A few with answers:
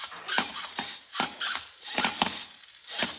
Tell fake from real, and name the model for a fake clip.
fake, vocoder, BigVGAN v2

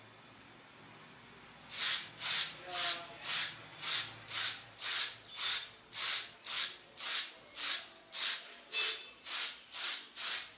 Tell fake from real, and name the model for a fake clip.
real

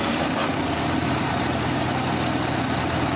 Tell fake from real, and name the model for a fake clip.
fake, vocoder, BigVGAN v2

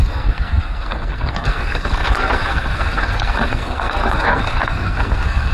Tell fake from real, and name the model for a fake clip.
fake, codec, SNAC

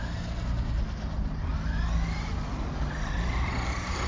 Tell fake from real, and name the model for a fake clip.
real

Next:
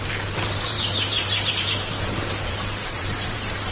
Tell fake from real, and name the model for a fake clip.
fake, vocoder, BigVGAN v2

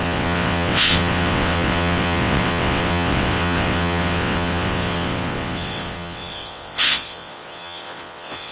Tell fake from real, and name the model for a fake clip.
fake, vocoder, WaveNeXt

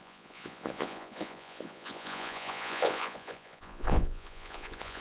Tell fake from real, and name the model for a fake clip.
fake, vocoder, Vocos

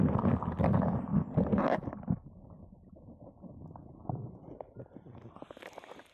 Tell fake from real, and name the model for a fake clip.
real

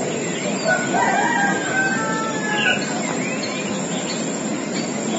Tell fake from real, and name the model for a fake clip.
real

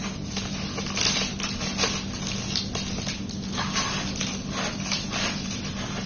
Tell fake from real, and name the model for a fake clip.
real